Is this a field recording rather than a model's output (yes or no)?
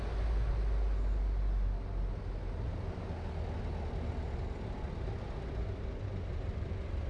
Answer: yes